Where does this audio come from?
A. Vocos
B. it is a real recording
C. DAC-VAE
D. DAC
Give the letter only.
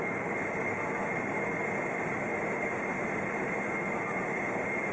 B